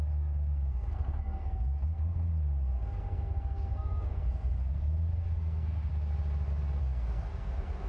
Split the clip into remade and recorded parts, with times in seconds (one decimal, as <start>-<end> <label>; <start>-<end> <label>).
0.0-5.9 remade; 5.9-6.8 recorded; 6.8-7.9 remade